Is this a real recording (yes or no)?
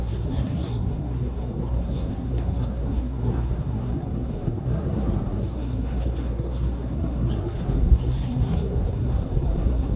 no